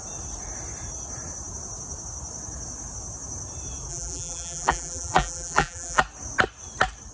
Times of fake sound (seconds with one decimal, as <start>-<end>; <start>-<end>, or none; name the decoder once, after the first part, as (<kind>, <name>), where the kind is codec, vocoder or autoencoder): 3.9-6.0 (vocoder, BigVGAN v2)